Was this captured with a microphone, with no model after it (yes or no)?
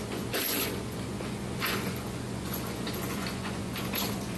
no